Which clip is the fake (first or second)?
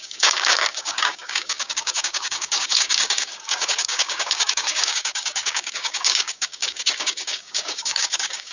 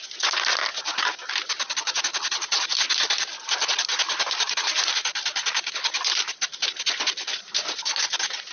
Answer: first